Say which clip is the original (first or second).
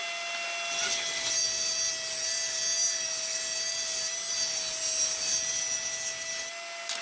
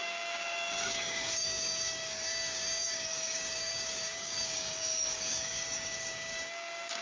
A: first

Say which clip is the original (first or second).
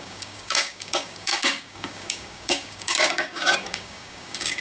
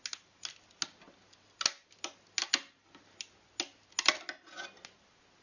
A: second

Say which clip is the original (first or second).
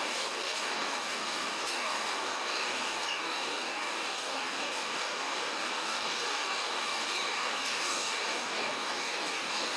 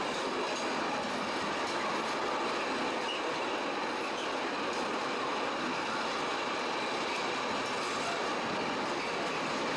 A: second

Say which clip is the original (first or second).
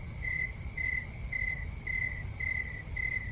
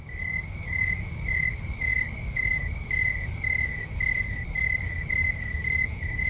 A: first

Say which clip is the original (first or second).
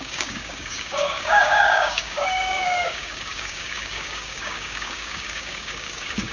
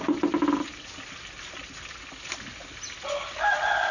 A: second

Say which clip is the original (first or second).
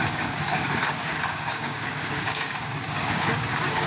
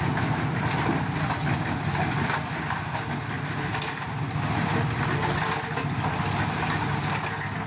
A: second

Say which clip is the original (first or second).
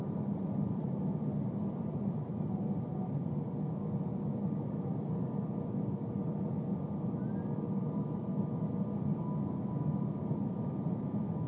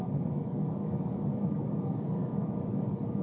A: first